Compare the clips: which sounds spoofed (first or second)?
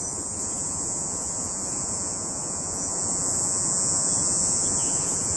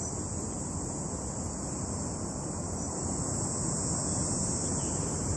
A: first